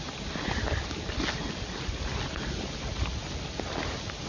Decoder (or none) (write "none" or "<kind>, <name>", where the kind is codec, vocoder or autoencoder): none